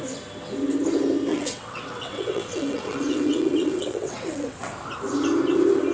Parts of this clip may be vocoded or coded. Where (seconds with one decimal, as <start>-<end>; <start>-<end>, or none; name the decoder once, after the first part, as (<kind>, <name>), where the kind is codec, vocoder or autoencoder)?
1.3-4.7 (vocoder, WaveNeXt)